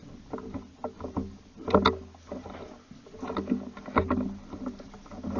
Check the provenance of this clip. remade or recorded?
recorded